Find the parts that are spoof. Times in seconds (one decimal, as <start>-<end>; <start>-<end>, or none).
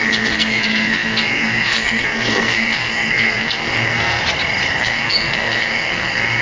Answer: 0.0-4.2; 4.8-6.4